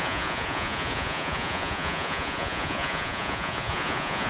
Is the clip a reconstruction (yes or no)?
yes